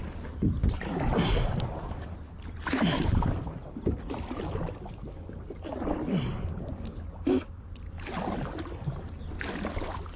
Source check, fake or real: real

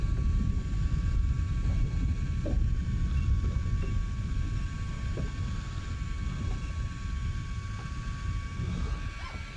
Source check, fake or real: real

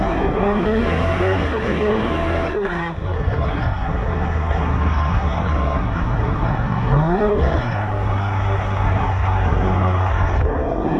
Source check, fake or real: fake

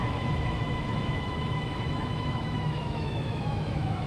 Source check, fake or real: fake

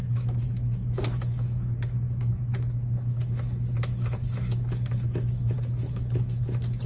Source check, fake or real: fake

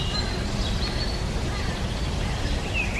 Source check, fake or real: real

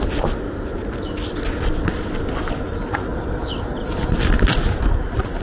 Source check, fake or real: real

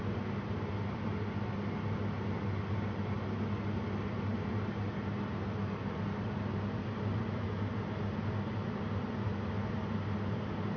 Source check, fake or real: real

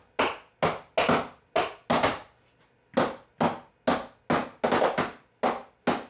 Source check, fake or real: real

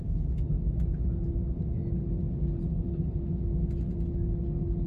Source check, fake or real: real